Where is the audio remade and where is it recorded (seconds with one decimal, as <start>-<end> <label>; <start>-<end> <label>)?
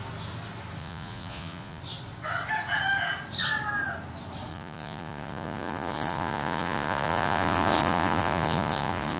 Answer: 0.0-0.8 recorded; 0.8-1.8 remade; 1.8-4.5 recorded; 4.5-9.2 remade